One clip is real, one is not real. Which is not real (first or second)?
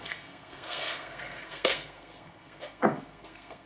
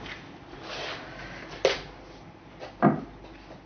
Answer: first